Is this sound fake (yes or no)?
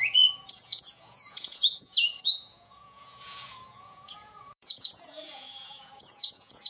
yes